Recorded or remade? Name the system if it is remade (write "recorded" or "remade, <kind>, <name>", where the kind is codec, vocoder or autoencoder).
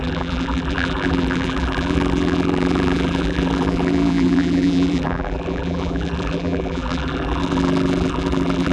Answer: remade, vocoder, BigVGAN v2